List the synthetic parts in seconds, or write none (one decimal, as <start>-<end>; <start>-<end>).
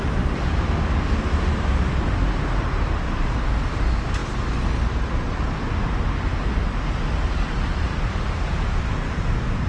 none